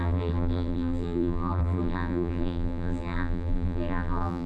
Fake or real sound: fake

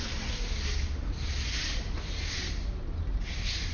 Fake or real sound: real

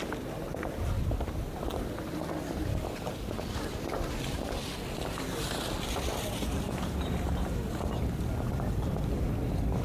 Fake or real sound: real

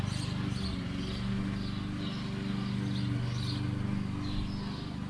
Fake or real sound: real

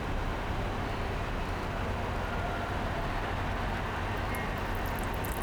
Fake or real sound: real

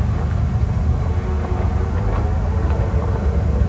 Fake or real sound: real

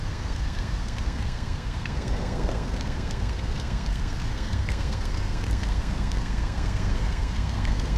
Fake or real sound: fake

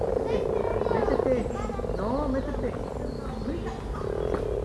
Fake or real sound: real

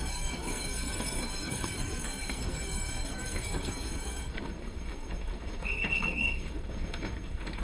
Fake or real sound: fake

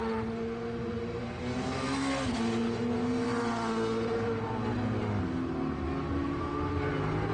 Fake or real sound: real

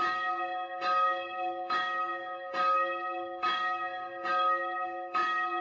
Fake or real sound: fake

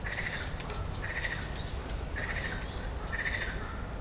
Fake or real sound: real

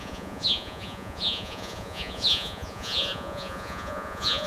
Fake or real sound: fake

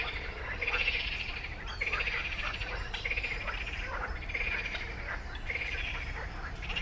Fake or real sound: real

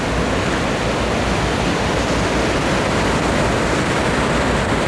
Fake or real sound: real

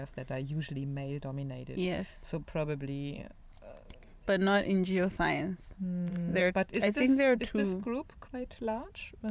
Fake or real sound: fake